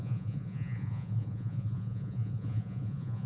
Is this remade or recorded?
remade